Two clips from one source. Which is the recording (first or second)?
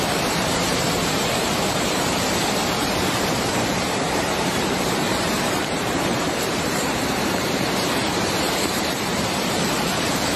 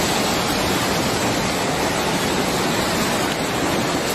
second